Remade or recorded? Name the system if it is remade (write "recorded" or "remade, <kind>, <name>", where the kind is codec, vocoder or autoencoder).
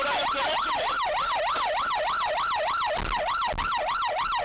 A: recorded